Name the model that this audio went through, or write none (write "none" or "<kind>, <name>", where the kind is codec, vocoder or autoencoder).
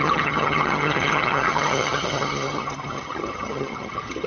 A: vocoder, HiFi-GAN